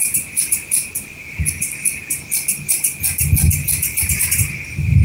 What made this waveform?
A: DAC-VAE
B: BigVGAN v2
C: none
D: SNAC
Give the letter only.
C